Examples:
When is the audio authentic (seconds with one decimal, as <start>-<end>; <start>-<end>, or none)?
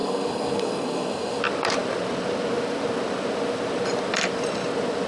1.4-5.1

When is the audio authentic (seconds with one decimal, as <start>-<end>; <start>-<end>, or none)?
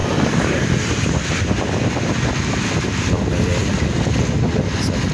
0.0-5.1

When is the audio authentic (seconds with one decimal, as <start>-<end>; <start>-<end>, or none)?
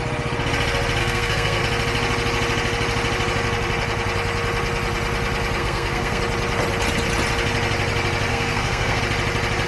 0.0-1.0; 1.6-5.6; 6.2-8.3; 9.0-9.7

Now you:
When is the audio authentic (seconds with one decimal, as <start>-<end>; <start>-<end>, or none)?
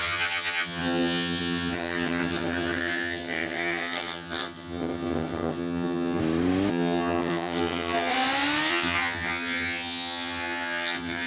6.2-6.7; 8.1-8.7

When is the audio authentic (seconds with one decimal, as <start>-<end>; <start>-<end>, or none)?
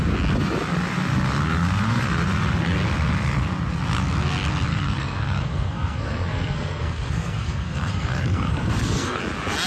0.0-4.7; 9.2-9.7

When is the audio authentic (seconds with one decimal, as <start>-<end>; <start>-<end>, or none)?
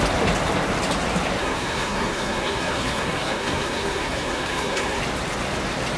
0.0-1.4; 5.0-6.0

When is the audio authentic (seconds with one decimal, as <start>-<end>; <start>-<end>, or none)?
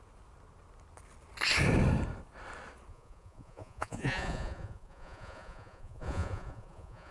0.0-2.9